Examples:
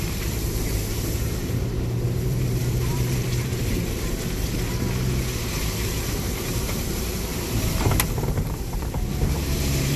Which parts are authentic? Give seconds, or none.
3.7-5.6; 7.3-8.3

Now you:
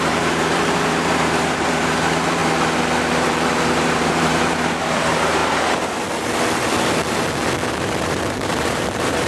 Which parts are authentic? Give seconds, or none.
2.4-3.2; 5.4-7.7